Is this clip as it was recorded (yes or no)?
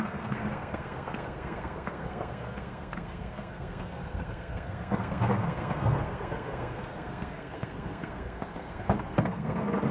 no